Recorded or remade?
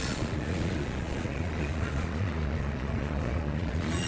remade